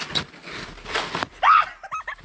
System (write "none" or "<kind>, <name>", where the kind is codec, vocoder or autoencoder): none